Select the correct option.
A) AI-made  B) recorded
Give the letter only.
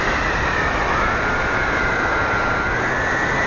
B